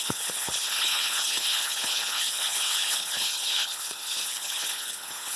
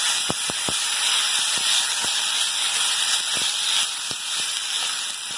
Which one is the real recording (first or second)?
second